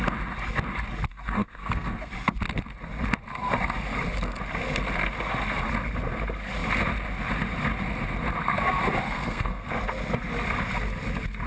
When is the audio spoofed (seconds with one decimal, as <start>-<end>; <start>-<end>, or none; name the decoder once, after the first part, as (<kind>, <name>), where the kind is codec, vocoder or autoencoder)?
1.1-2.1 (codec, SNAC); 9.0-9.7